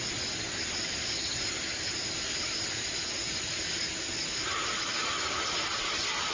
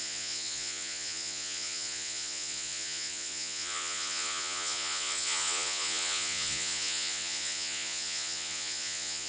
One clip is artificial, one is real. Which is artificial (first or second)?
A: second